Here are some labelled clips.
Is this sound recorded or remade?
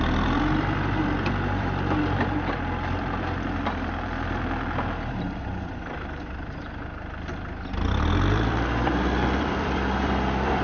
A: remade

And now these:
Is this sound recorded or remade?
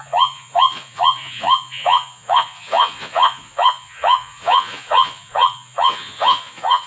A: remade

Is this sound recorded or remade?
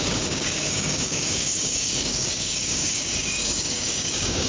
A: remade